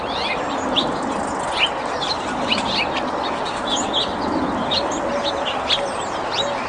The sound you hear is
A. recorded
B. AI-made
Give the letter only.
A